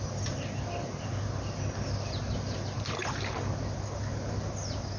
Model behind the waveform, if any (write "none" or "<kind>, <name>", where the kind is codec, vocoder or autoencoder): none